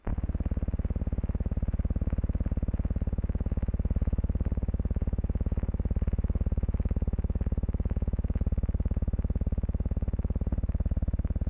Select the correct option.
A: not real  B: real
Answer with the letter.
B